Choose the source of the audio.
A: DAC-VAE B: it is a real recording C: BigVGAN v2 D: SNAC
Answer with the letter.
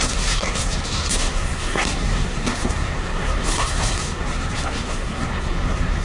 D